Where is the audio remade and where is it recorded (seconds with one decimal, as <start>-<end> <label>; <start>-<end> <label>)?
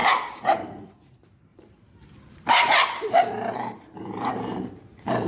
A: 0.0-0.8 remade; 0.8-1.5 recorded; 1.5-4.6 remade; 4.6-5.3 recorded